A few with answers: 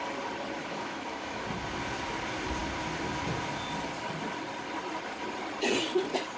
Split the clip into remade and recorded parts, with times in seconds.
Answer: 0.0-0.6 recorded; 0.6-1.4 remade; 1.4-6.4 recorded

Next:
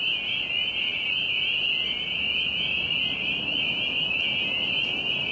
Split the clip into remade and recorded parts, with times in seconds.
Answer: 0.0-5.3 recorded

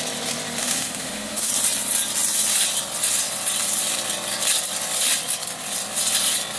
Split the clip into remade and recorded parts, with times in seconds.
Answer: 0.0-0.6 recorded; 0.6-1.5 remade; 1.5-6.6 recorded

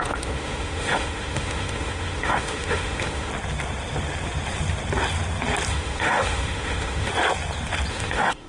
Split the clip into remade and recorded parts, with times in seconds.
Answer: 0.0-3.3 remade; 3.3-5.7 recorded; 5.7-7.1 remade; 7.1-7.9 recorded; 7.9-8.5 remade